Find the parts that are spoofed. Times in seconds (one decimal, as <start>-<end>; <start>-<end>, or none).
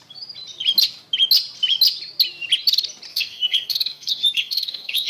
3.1-5.1